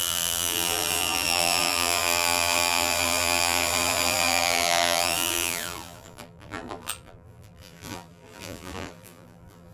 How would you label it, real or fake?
fake